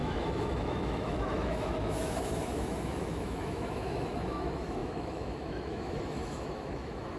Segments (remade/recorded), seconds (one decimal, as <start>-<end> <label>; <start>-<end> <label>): 0.0-7.2 remade